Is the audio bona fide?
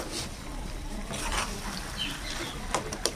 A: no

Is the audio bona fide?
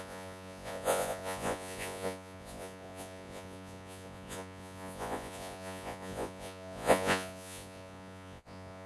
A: no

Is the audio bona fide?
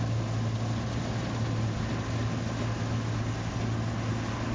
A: yes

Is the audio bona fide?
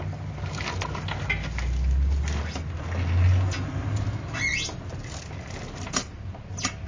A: yes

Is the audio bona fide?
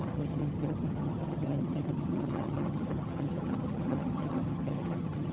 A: no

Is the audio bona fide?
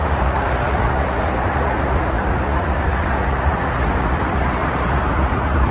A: no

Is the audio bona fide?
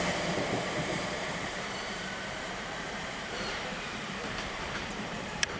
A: no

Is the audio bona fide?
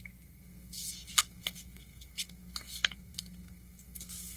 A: no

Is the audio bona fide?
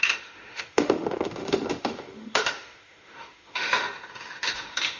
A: no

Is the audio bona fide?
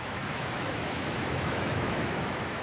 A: no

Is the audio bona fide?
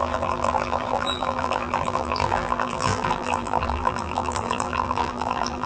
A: no